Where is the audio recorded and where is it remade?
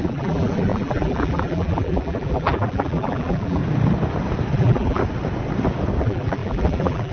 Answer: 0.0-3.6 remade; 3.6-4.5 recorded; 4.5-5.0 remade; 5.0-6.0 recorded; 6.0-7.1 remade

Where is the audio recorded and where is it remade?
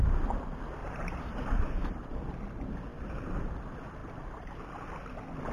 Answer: 0.0-0.8 recorded; 0.8-2.2 remade; 2.2-2.9 recorded; 2.9-3.5 remade; 3.5-4.0 recorded; 4.0-4.6 remade; 4.6-5.5 recorded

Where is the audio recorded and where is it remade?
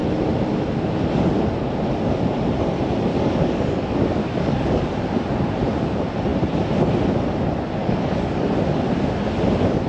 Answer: 0.0-3.1 recorded; 3.1-4.8 remade; 4.8-7.8 recorded; 7.8-8.4 remade; 8.4-9.9 recorded